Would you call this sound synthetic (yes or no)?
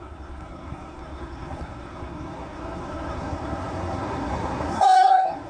yes